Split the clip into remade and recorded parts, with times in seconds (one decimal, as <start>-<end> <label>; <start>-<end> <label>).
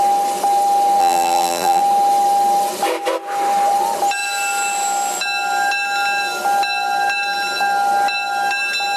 0.0-1.0 recorded; 1.0-1.8 remade; 1.8-9.0 recorded